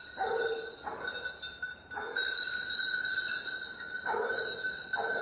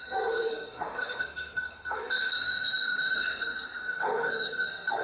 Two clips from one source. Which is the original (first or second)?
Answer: first